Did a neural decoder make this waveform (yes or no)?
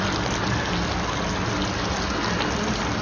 no